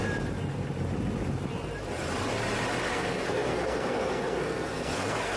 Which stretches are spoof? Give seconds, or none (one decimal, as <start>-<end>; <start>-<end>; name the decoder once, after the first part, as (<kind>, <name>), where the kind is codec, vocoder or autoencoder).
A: 2.9-5.4 (codec, SNAC)